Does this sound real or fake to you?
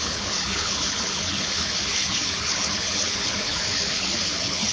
fake